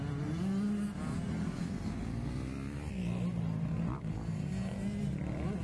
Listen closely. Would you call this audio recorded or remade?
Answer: recorded